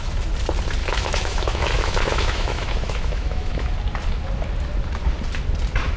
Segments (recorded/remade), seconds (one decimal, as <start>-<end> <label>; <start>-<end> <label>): 0.0-0.8 recorded; 0.8-3.7 remade; 3.7-6.0 recorded